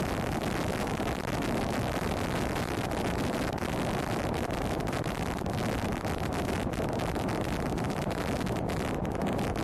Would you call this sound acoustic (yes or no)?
no